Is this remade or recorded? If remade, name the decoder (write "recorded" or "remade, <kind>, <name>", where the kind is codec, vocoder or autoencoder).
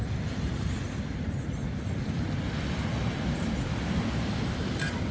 recorded